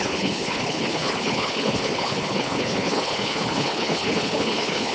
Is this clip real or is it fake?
fake